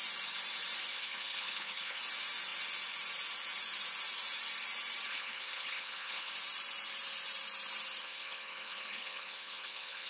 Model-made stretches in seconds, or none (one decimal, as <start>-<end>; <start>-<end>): 0.9-2.0; 5.1-6.3; 8.0-10.1

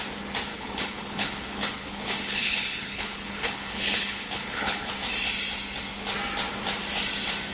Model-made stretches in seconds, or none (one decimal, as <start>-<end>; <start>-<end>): 0.5-4.9

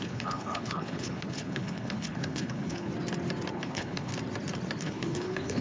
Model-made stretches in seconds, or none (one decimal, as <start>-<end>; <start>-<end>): 0.0-2.9; 3.5-4.1; 4.8-5.6

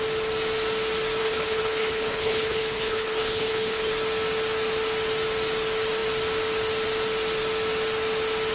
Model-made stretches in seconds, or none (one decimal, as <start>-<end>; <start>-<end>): 1.2-3.9

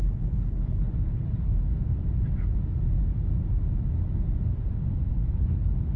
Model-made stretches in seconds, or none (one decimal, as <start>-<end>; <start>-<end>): 0.0-1.5; 5.1-6.0

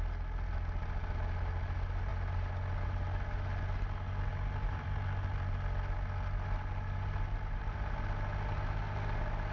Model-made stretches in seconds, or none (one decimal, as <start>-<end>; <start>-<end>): none

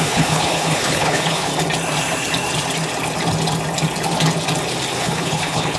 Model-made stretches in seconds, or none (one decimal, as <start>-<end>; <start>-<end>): 0.0-1.5; 5.0-5.8